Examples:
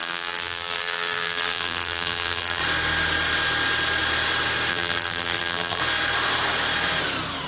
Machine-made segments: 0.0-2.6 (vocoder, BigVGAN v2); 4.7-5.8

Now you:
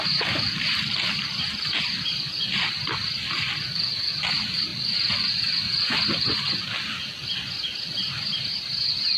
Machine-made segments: 8.0-8.7 (vocoder, BigVGAN v2)

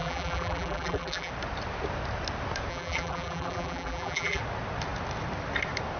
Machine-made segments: 0.0-1.3 (vocoder, BigVGAN v2); 2.7-4.4

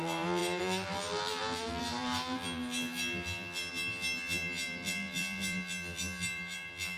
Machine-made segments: 0.0-7.0 (vocoder, BigVGAN v2)

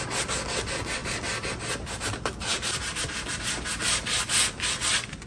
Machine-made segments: none

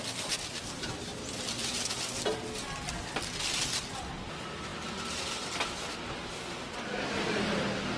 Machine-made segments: 1.1-1.9 (vocoder, BigVGAN v2)